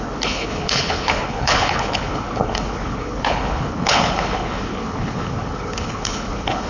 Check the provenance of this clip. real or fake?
fake